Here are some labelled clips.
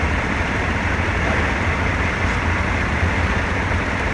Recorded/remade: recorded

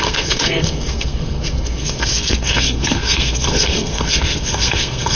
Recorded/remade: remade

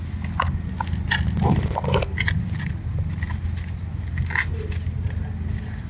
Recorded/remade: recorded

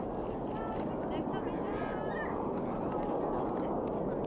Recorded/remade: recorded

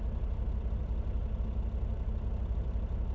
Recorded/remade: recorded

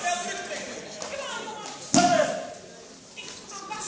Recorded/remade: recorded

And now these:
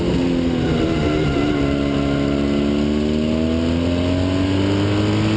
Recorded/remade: recorded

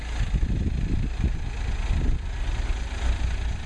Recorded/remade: recorded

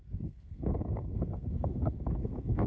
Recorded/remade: remade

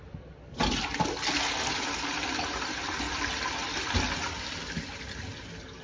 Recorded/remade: recorded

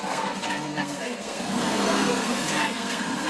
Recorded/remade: remade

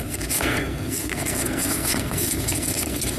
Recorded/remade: remade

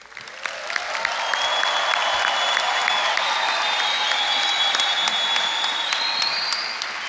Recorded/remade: recorded